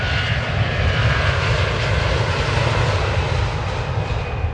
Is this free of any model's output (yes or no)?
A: yes